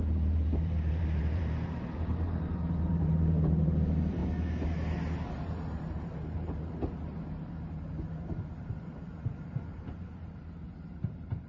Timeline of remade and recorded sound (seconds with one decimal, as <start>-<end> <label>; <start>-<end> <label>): 0.0-4.2 remade; 4.2-5.3 recorded; 5.3-11.5 remade

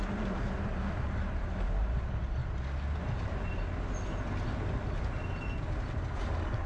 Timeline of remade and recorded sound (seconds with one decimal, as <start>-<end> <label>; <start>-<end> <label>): 0.0-2.4 remade; 2.4-6.2 recorded; 6.2-6.7 remade